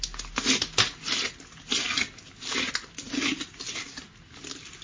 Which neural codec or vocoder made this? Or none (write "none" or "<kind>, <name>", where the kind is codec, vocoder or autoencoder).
none